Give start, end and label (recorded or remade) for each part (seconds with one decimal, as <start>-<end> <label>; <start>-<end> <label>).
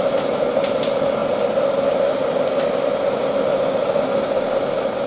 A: 0.0-5.1 recorded